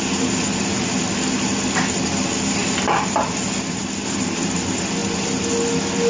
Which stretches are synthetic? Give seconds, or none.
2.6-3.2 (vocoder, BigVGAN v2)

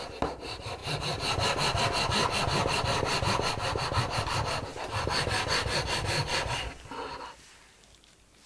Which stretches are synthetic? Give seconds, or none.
none

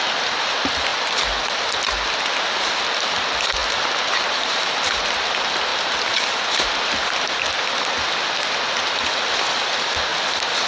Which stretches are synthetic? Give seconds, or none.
0.0-0.9 (vocoder, BigVGAN v2); 2.4-3.6; 5.1-5.7; 8.8-10.7

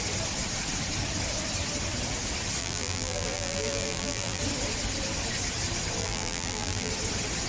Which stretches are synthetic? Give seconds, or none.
2.6-4.4 (vocoder, BigVGAN v2); 6.0-6.9

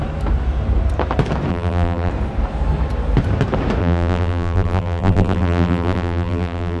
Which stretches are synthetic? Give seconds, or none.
1.5-2.1 (vocoder, BigVGAN v2); 3.8-6.8

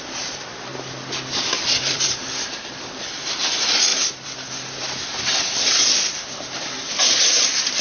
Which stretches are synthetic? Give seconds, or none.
0.0-0.7 (vocoder, BigVGAN v2); 1.8-7.8